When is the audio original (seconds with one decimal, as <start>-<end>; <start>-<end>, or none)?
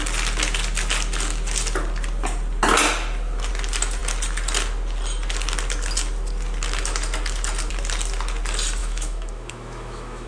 0.0-8.8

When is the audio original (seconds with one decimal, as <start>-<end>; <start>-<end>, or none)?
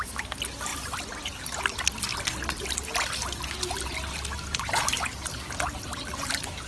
0.0-6.7